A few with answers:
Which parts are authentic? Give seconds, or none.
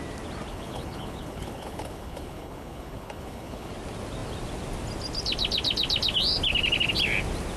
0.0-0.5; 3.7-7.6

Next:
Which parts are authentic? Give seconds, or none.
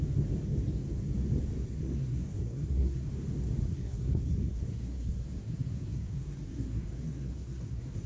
0.0-1.8; 3.1-3.6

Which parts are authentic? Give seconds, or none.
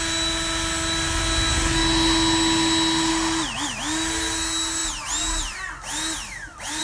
0.0-6.8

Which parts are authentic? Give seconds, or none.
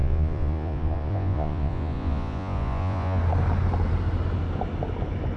3.2-5.4